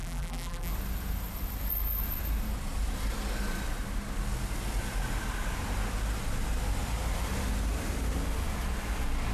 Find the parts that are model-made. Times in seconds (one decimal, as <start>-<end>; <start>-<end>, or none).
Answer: 0.0-0.7